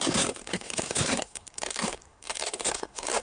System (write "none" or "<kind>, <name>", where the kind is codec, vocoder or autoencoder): codec, SNAC